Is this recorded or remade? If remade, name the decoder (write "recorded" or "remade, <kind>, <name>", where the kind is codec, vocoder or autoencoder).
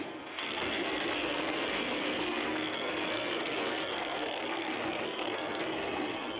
remade, codec, SNAC